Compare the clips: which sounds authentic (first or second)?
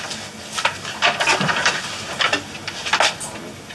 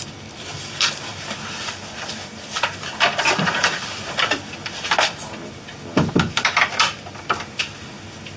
first